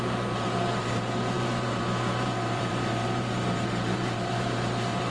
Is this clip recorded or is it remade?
remade